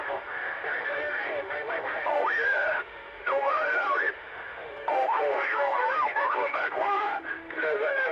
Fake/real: fake